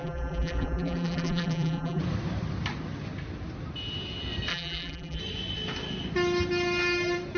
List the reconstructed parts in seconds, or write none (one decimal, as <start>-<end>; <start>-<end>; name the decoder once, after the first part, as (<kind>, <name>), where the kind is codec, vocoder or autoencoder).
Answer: 0.0-2.0 (vocoder, BigVGAN v2); 4.5-5.2